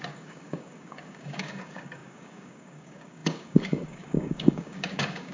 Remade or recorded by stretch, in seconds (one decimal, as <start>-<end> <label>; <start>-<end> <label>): 0.0-5.3 remade